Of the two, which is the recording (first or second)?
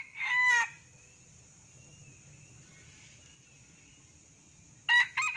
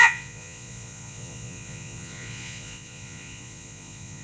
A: first